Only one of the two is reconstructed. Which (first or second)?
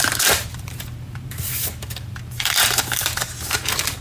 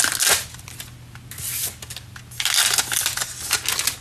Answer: first